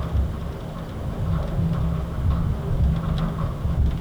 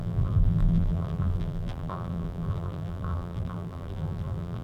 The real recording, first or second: first